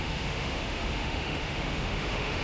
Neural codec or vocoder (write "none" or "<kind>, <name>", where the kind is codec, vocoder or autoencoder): autoencoder, DAC-VAE